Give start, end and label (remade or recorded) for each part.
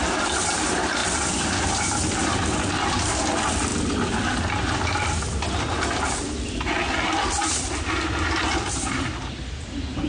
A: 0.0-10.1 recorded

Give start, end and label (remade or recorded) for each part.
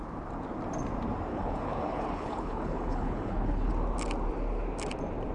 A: 0.0-1.3 recorded; 1.3-3.7 remade; 3.7-5.3 recorded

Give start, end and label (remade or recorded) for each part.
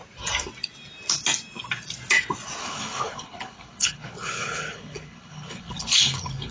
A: 0.0-2.6 recorded; 2.6-6.5 remade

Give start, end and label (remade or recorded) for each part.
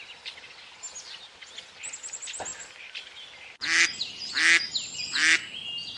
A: 0.0-6.0 recorded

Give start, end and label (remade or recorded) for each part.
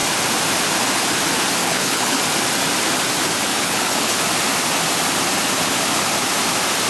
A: 0.0-1.6 recorded; 1.6-2.2 remade; 2.2-3.5 recorded; 3.5-4.2 remade; 4.2-6.9 recorded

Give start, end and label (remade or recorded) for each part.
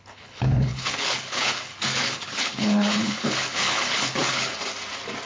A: 0.0-4.5 remade; 4.5-5.3 recorded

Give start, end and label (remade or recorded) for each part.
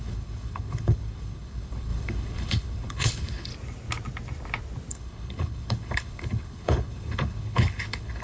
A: 0.0-3.5 remade; 3.5-4.9 recorded; 4.9-8.2 remade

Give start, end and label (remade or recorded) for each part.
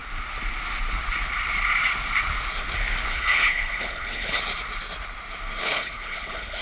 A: 0.0-3.1 recorded; 3.1-4.4 remade; 4.4-5.6 recorded; 5.6-6.6 remade